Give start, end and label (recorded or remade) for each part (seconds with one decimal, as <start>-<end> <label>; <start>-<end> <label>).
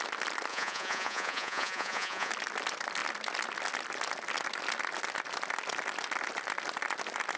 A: 0.0-0.5 recorded; 0.5-2.3 remade; 2.3-7.4 recorded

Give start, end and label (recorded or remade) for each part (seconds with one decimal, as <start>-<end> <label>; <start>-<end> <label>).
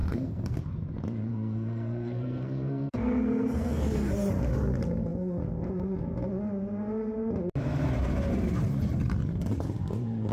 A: 0.0-0.6 remade; 0.6-1.3 recorded; 1.3-4.1 remade; 4.1-10.3 recorded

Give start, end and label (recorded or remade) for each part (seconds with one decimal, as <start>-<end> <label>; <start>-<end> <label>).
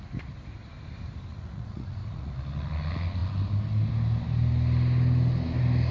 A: 0.0-1.3 recorded; 1.3-2.3 remade; 2.3-5.9 recorded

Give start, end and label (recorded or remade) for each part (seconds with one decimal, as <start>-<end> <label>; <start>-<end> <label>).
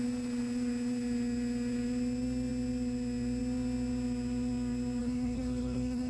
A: 0.0-5.0 recorded; 5.0-6.1 remade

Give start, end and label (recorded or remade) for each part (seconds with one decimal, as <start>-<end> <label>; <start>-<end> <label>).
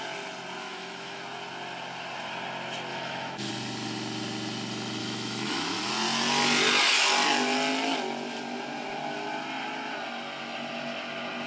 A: 0.0-0.6 recorded; 0.6-1.2 remade; 1.2-2.9 recorded; 2.9-3.5 remade; 3.5-5.0 recorded; 5.0-5.9 remade; 5.9-11.5 recorded